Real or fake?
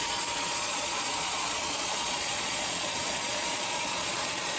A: fake